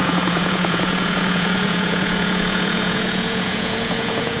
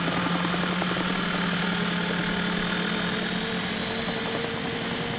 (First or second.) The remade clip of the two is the first